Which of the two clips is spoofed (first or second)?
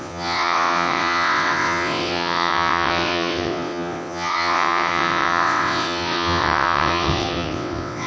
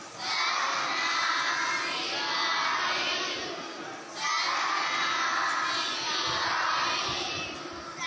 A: first